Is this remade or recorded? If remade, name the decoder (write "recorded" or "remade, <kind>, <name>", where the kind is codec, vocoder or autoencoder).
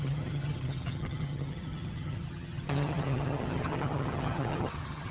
remade, vocoder, HiFi-GAN